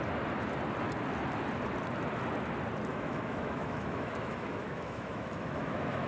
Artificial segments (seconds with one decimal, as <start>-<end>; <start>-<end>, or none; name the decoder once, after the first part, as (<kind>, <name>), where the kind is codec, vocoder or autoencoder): 2.9-6.1 (autoencoder, DAC-VAE)